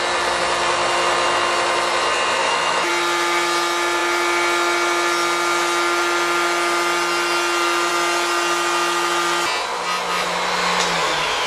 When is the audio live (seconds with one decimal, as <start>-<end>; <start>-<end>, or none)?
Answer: 0.0-2.4; 2.9-11.5